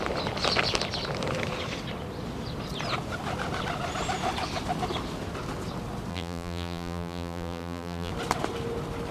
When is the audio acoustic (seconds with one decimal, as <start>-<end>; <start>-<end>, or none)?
0.0-6.1; 8.1-9.1